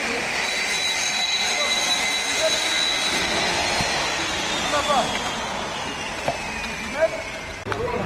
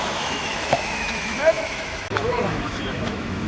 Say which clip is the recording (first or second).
first